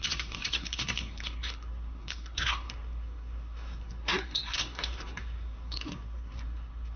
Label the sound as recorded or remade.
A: remade